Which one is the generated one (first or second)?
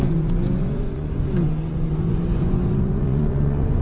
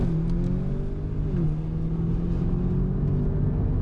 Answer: first